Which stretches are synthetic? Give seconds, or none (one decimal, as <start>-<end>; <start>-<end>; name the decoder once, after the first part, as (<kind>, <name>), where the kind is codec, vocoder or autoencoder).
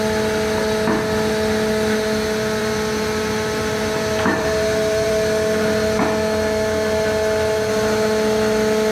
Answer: 2.6-5.1 (vocoder, BigVGAN v2)